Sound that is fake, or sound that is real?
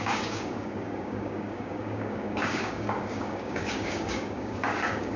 fake